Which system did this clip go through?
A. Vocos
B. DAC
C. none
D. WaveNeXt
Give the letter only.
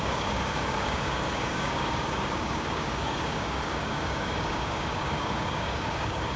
B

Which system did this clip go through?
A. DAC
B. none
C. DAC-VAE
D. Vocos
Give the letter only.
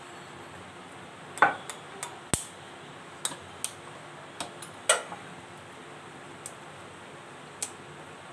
B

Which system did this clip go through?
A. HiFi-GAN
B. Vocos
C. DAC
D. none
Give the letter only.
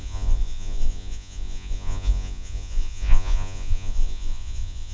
B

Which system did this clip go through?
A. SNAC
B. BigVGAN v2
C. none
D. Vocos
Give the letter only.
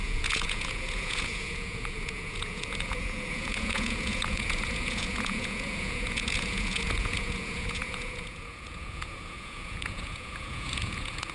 D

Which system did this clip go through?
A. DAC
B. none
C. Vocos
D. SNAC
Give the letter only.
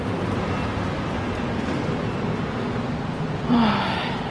B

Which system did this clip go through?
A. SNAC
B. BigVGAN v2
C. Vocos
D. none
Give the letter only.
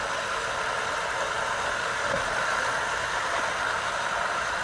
D